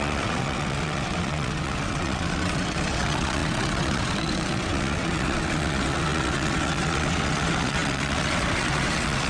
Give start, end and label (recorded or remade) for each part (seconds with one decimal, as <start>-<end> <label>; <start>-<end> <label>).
0.0-9.3 remade